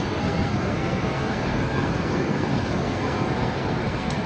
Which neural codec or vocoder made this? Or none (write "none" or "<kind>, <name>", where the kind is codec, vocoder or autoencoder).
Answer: codec, SNAC